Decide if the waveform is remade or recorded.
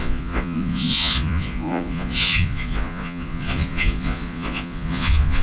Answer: remade